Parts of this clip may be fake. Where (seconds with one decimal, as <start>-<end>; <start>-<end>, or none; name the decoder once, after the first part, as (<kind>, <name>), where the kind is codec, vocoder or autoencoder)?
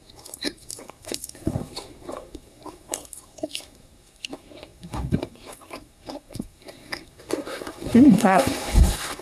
0.0-9.2 (codec, SNAC)